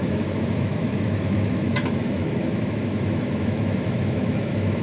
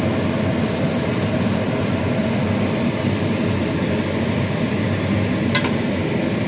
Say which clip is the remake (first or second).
first